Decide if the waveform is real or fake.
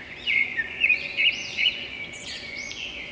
fake